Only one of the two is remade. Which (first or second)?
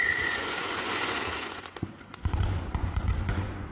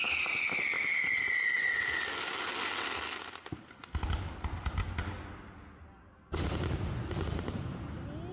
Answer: first